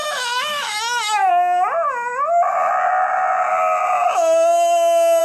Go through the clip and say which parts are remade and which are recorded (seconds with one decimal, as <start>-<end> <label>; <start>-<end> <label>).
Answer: 0.0-1.3 remade; 1.3-5.2 recorded